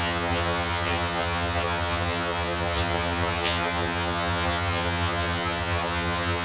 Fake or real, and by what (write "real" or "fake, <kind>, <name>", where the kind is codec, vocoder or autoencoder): fake, vocoder, HiFi-GAN